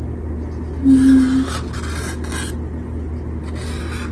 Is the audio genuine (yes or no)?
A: yes